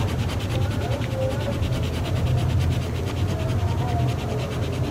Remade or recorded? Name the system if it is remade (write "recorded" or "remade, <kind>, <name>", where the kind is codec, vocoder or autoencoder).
recorded